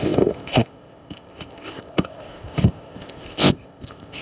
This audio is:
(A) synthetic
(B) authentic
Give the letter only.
A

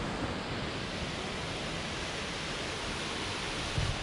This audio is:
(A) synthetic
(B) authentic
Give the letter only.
B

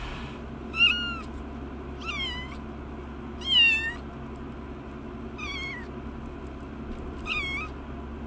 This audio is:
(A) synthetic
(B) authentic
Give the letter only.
B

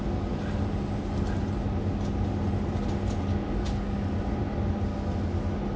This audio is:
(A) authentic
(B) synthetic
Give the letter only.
A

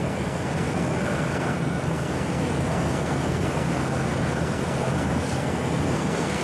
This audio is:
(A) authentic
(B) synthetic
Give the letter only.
B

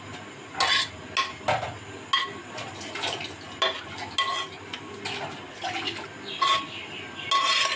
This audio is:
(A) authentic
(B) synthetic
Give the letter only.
A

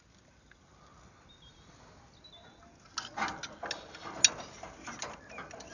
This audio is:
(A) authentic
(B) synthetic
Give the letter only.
A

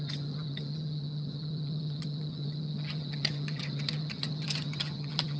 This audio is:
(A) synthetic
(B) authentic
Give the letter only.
A